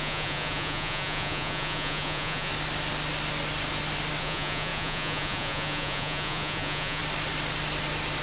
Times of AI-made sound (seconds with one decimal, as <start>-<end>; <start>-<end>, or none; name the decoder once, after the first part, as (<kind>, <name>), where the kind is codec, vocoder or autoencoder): 0.0-2.5 (vocoder, Vocos); 4.2-7.0